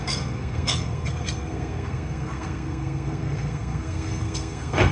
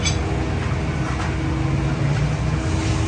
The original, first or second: second